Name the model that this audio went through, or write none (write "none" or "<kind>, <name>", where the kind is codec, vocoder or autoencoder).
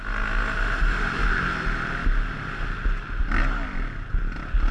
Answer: none